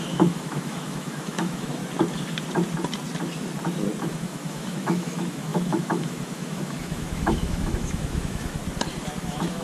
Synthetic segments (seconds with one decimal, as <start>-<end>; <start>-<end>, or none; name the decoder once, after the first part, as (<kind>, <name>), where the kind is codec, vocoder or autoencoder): 0.0-1.8 (autoencoder, DAC-VAE); 4.1-8.6; 9.2-9.6